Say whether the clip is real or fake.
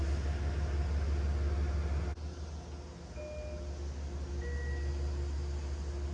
real